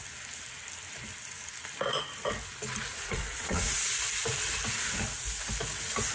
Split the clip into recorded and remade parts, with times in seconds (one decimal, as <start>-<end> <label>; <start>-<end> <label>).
0.0-2.9 recorded; 2.9-3.8 remade; 3.8-6.1 recorded